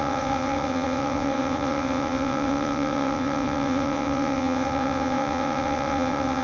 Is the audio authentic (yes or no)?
no